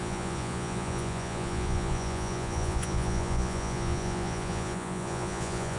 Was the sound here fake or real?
fake